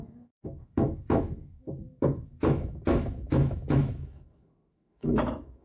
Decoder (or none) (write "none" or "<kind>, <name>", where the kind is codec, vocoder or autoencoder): autoencoder, DAC-VAE